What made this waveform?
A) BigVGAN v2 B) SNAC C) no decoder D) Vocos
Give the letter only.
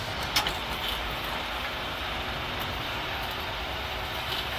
C